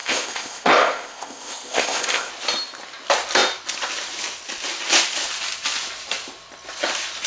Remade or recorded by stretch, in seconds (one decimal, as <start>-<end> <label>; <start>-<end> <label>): 0.0-2.3 remade; 2.3-7.3 recorded